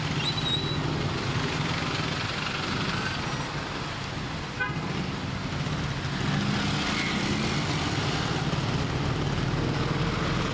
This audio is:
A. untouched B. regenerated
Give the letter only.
A